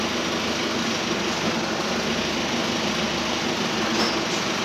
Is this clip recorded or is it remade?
recorded